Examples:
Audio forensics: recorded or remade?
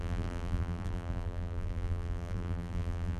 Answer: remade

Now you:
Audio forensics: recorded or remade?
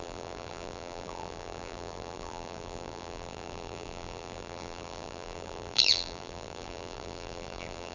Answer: remade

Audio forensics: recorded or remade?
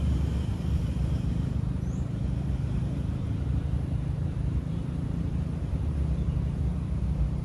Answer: remade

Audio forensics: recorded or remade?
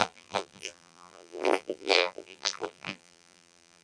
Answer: remade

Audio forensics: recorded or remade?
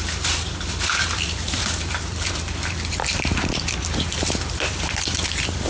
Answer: remade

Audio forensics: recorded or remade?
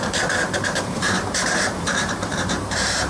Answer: remade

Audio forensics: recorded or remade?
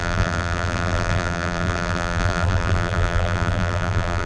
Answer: remade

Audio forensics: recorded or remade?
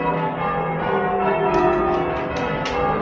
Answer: recorded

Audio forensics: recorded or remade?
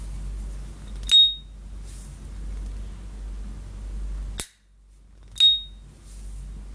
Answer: recorded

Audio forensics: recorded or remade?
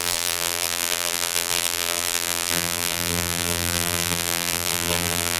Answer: remade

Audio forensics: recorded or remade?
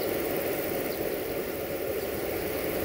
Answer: remade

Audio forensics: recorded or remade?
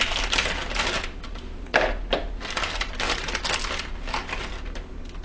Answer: recorded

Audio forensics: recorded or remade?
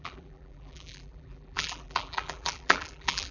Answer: remade